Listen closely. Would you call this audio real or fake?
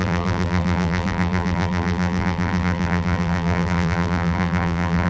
fake